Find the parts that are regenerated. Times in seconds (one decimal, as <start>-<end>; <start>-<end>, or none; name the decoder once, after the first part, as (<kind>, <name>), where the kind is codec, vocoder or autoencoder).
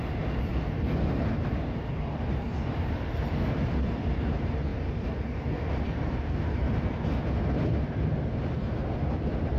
0.0-9.6 (vocoder, BigVGAN v2)